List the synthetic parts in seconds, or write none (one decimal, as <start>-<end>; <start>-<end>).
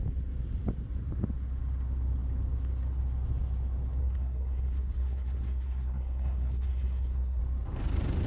4.0-7.4